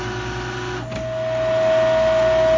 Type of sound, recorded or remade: recorded